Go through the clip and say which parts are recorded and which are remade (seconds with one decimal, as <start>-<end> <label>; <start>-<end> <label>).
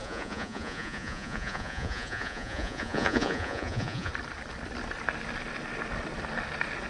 0.0-4.1 remade; 4.1-6.9 recorded